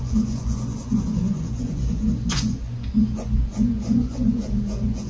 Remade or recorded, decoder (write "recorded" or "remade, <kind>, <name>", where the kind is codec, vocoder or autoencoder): remade, vocoder, Vocos